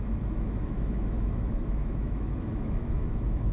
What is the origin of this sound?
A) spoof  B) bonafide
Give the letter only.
A